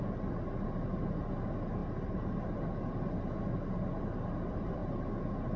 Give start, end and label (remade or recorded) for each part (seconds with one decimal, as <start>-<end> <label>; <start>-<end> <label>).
0.0-5.6 recorded